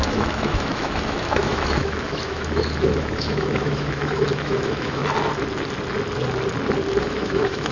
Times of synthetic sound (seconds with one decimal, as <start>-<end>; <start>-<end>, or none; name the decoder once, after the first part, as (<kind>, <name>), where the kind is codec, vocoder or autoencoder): 0.0-5.0 (autoencoder, DAC-VAE); 7.0-7.7